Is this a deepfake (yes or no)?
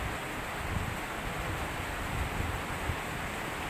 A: no